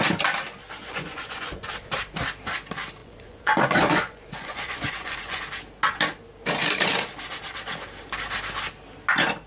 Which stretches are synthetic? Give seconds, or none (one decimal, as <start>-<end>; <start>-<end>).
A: 0.8-1.7; 3.0-5.4